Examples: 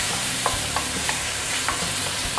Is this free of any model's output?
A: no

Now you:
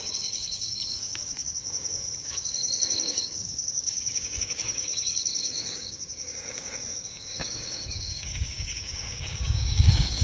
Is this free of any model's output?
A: no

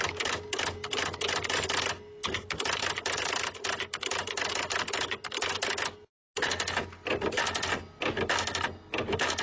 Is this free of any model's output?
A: yes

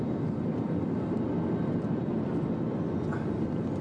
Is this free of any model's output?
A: yes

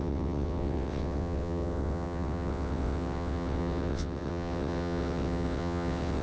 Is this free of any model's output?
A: no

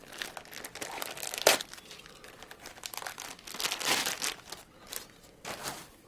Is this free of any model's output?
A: yes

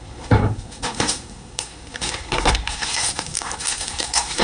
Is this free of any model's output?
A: no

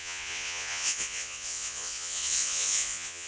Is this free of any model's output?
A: no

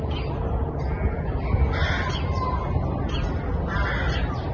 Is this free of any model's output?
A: yes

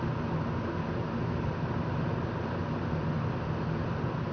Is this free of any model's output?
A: yes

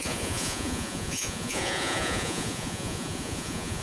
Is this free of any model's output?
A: no